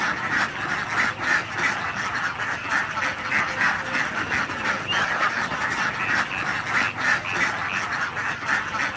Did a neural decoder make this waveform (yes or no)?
no